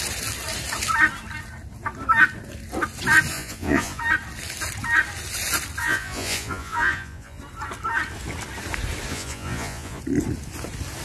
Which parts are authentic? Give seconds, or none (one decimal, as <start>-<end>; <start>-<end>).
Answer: 0.0-3.3; 4.0-5.8; 7.4-9.1; 10.0-11.0